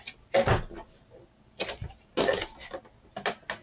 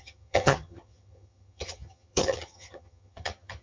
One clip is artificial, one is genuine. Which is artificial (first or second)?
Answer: second